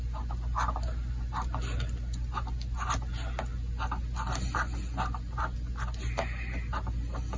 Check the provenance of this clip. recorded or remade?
recorded